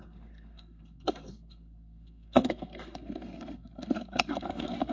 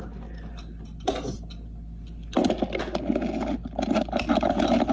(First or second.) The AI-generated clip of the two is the first